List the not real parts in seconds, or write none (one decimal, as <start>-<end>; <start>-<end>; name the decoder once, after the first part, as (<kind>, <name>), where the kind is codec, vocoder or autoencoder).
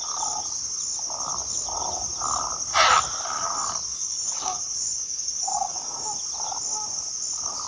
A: 3.9-6.1 (codec, DAC)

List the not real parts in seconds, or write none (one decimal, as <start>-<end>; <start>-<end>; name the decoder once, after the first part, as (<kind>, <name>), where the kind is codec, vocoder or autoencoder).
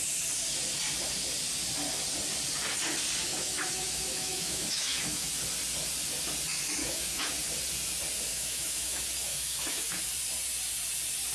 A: 3.3-5.3 (autoencoder, DAC-VAE); 6.8-7.3; 8.3-10.0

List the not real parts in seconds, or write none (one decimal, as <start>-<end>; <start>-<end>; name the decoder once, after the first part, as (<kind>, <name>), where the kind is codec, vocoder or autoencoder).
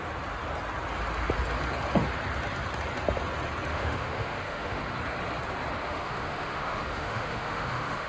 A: 3.7-4.8 (autoencoder, DAC-VAE); 5.8-8.1